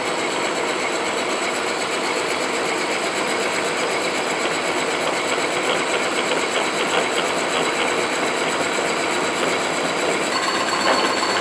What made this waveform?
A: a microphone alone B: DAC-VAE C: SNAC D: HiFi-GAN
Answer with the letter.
A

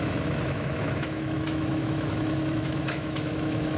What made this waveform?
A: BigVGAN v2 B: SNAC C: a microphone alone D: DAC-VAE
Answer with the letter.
D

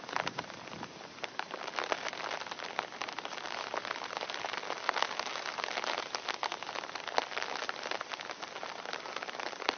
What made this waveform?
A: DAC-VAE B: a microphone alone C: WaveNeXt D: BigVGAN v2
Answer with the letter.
B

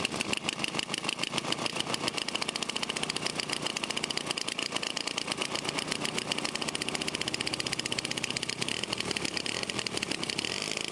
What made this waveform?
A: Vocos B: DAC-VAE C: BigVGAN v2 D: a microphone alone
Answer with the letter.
D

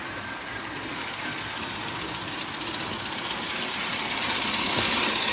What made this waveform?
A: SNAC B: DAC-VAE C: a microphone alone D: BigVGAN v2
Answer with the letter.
C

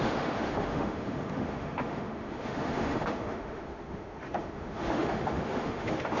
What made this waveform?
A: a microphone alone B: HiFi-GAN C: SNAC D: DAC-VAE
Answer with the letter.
D